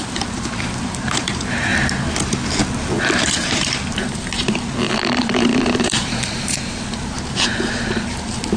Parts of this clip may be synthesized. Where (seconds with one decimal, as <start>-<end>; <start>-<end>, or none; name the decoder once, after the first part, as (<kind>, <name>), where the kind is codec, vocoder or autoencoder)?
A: 0.0-1.7 (vocoder, BigVGAN v2); 3.1-8.6